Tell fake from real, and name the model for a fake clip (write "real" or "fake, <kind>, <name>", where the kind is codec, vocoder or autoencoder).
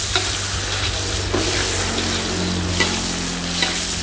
real